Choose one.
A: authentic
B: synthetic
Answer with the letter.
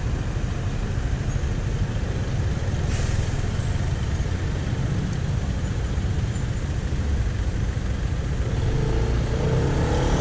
A